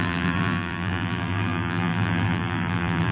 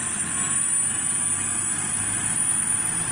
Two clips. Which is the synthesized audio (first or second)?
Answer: first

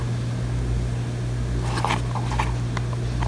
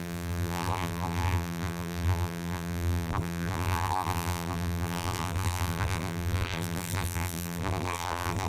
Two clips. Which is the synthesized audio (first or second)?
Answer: second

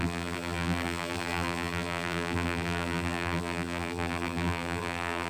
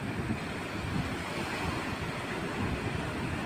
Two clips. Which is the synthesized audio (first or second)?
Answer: first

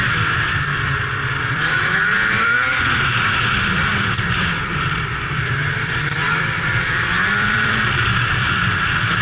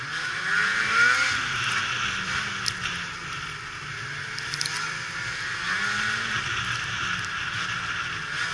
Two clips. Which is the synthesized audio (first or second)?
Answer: first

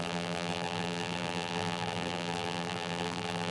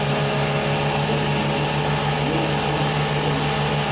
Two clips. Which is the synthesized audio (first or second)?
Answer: first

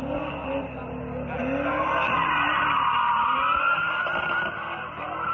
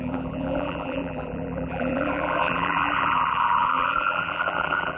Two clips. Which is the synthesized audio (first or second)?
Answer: second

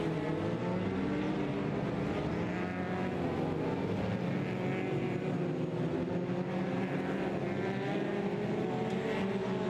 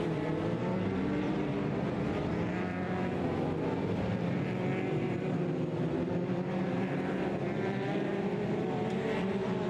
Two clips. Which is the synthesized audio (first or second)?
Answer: second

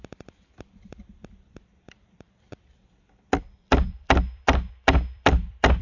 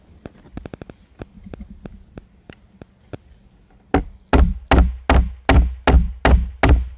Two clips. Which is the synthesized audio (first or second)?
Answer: first